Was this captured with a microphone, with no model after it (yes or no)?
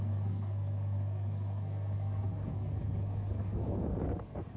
no